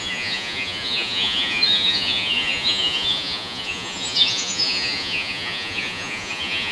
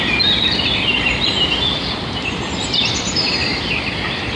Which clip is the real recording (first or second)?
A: second